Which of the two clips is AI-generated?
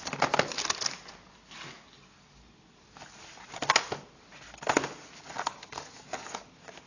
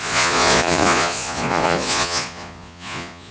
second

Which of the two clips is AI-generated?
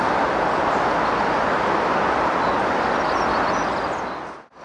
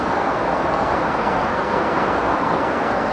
second